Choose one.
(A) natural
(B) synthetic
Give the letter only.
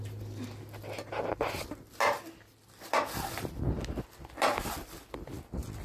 A